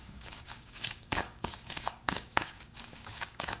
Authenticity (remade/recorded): remade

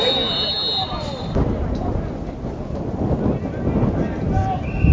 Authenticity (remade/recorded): recorded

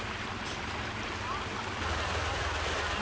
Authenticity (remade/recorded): recorded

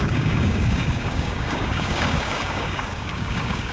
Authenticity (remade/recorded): remade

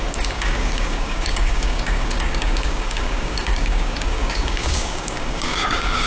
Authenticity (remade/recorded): remade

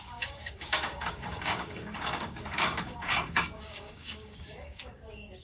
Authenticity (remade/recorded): remade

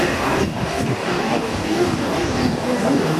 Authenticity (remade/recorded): remade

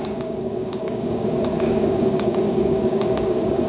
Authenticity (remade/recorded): remade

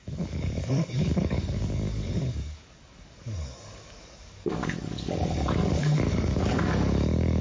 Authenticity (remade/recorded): remade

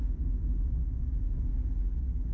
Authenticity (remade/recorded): recorded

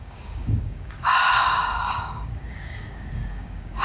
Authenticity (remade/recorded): remade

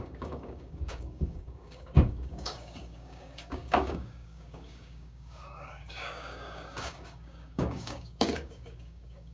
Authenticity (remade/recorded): remade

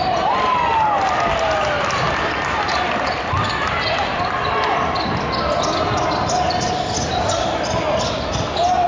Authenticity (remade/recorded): recorded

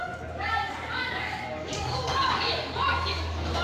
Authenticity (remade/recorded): remade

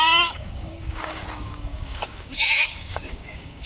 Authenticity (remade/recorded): remade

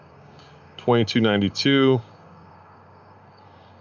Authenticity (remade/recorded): remade